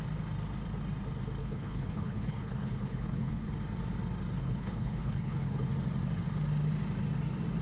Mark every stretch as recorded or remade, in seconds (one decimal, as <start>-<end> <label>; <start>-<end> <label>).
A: 0.0-1.4 recorded; 1.4-3.5 remade; 3.5-4.4 recorded; 4.4-5.7 remade; 5.7-7.6 recorded